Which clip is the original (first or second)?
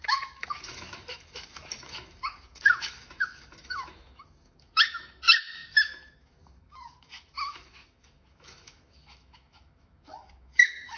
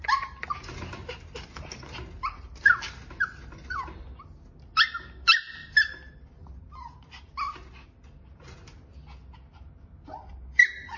second